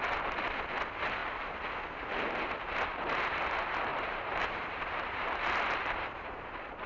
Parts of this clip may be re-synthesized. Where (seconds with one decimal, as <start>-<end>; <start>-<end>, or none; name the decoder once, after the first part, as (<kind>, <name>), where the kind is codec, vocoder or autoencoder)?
3.9-6.9 (vocoder, BigVGAN v2)